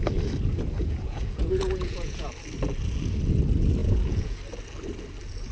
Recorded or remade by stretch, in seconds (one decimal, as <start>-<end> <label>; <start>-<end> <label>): 0.0-0.8 recorded; 0.8-2.3 remade; 2.3-3.8 recorded; 3.8-4.4 remade; 4.4-5.5 recorded